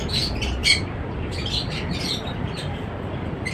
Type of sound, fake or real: real